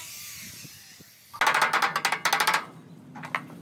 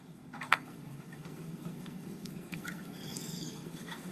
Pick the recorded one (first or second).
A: first